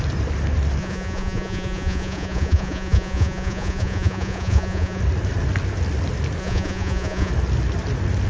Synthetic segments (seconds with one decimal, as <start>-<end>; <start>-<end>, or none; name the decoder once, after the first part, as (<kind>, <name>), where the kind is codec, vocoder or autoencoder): 0.8-5.0 (vocoder, Vocos); 6.4-7.3